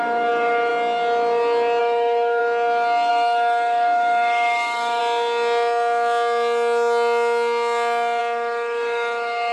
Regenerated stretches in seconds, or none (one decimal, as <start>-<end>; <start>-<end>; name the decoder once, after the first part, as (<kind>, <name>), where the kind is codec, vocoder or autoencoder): 0.0-0.7 (autoencoder, DAC-VAE); 1.8-2.4; 3.1-5.0; 8.2-9.5